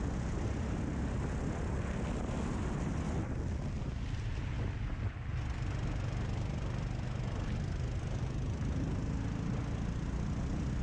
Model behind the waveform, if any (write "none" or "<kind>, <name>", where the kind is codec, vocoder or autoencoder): none